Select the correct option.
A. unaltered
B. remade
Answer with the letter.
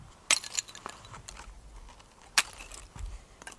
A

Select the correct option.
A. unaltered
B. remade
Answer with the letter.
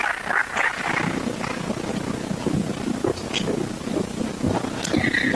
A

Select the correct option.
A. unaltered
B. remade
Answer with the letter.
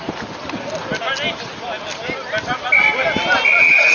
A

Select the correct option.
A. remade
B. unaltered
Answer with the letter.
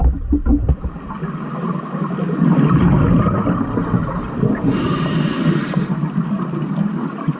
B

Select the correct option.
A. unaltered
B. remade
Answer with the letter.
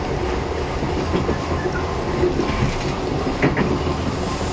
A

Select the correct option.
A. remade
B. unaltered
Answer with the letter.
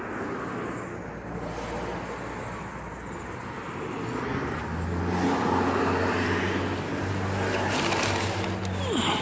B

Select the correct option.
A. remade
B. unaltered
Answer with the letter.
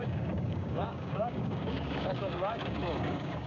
A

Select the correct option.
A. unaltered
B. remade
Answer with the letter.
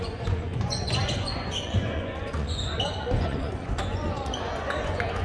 B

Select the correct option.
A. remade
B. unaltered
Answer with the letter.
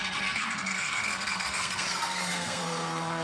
A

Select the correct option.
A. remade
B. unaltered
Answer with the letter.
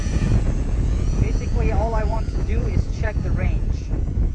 A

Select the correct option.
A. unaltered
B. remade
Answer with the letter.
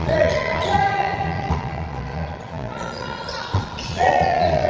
B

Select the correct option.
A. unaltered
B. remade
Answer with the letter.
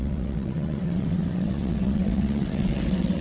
B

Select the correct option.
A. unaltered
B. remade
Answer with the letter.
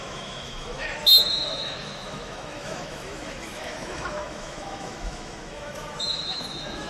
B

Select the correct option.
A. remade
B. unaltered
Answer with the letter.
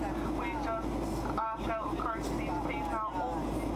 B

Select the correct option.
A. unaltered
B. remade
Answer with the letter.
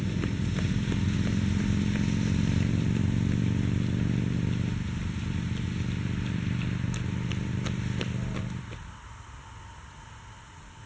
A